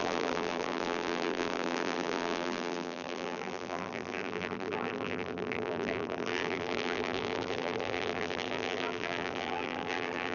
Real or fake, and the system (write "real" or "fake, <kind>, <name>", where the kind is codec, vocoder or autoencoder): fake, vocoder, BigVGAN v2